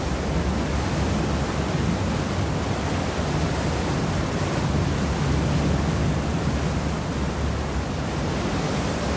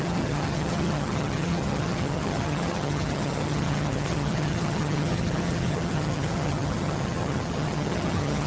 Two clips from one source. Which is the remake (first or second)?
second